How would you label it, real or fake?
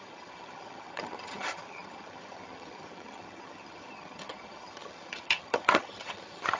fake